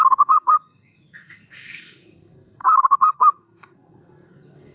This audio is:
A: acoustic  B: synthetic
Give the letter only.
B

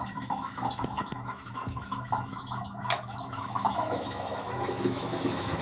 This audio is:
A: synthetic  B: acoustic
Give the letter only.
A